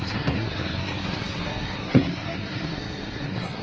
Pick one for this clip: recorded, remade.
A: remade